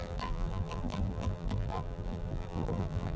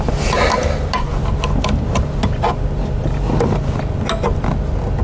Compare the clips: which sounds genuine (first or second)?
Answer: second